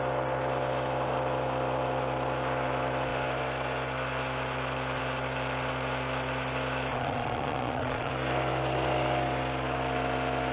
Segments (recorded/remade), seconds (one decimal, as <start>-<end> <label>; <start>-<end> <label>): 0.0-6.9 recorded; 6.9-8.1 remade; 8.1-10.5 recorded